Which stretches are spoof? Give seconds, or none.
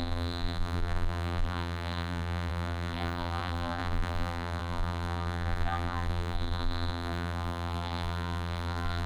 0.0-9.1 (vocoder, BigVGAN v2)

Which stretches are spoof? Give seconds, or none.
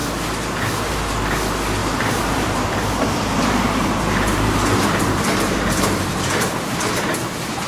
1.8-6.4 (vocoder, BigVGAN v2)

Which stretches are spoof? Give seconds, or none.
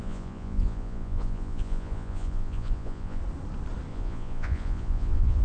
0.0-3.2 (vocoder, Vocos); 3.9-5.4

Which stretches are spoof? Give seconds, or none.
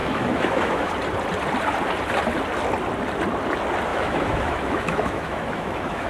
0.0-0.9 (autoencoder, DAC-VAE); 3.9-6.1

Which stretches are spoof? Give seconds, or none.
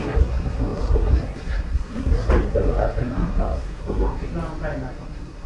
0.0-4.3 (codec, SNAC); 4.9-5.5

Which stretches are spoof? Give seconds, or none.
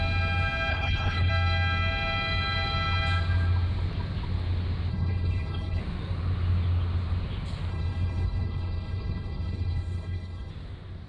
0.7-1.3 (codec, HILCodec); 4.9-5.8; 7.7-10.5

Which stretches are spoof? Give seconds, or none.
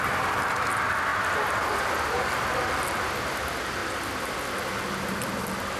none